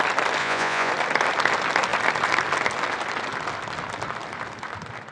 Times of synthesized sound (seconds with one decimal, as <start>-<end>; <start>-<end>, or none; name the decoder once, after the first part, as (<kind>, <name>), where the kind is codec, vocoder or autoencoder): 0.4-0.9 (vocoder, Vocos)